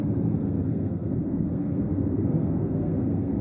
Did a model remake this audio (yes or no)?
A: yes